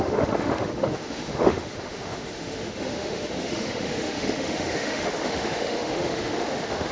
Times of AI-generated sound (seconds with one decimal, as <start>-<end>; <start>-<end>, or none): 0.0-6.9